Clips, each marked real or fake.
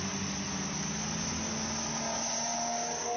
real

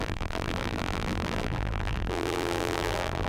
fake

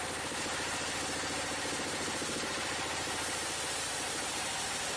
real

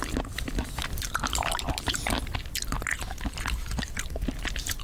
real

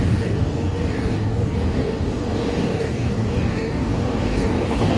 fake